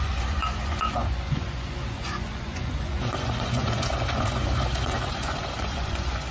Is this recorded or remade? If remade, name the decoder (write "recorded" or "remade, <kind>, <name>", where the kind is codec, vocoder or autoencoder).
remade, vocoder, Vocos